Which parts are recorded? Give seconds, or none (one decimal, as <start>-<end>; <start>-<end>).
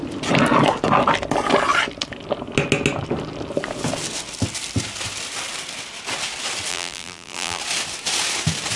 0.0-6.7; 7.6-8.8